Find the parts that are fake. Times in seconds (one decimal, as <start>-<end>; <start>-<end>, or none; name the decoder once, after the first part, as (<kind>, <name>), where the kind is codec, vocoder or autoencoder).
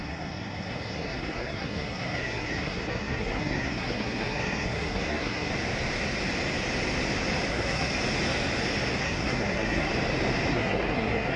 0.0-5.5 (codec, SNAC); 7.5-7.9; 9.0-9.9; 10.5-11.4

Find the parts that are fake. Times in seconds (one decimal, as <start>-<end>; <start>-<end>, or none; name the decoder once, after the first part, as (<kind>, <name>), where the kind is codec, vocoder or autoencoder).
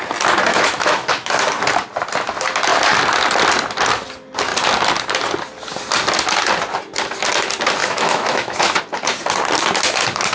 0.5-1.4 (autoencoder, DAC-VAE); 7.8-8.8